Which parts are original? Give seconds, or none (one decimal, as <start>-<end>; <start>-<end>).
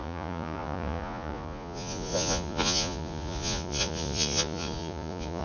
none